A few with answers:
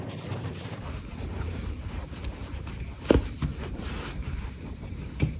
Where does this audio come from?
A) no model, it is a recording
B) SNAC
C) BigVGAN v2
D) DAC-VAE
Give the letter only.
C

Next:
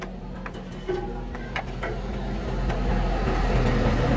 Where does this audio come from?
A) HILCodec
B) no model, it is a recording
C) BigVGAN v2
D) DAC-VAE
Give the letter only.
B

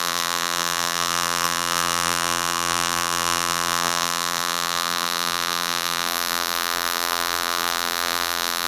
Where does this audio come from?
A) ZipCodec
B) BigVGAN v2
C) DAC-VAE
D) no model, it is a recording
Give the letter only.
B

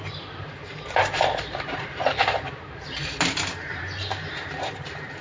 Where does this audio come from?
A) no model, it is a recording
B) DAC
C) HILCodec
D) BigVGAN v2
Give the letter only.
D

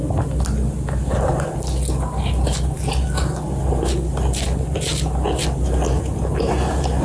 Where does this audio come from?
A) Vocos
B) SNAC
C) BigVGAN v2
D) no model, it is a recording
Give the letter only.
D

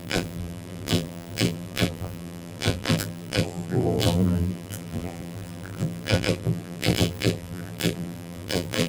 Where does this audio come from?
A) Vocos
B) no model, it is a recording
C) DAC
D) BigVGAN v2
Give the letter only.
D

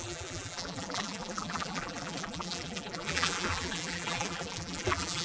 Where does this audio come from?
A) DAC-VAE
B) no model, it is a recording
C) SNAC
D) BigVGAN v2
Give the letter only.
D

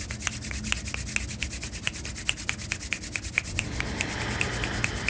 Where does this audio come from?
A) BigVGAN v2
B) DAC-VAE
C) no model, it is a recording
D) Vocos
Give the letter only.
C